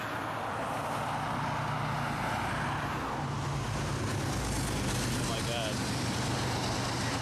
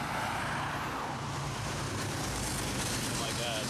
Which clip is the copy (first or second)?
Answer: second